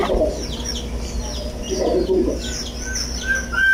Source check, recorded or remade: recorded